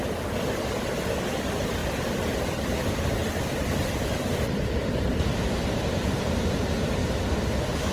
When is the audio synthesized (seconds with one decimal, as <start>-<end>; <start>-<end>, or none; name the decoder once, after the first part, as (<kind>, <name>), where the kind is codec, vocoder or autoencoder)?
none